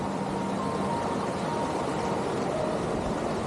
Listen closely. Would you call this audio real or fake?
real